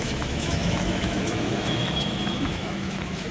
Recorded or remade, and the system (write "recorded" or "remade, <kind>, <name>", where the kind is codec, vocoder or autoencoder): remade, autoencoder, DAC-VAE